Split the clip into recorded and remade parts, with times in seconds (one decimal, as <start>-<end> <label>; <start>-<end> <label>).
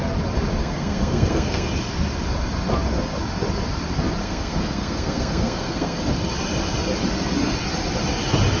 0.0-0.6 recorded; 0.6-1.7 remade; 1.7-4.2 recorded; 4.2-6.0 remade; 6.0-8.6 recorded